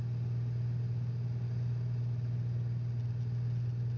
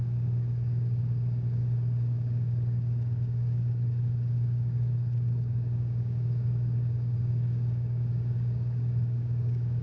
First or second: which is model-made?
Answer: second